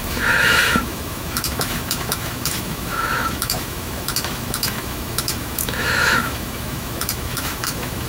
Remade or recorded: remade